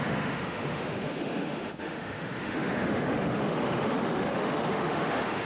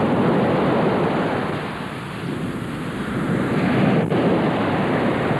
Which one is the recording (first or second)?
second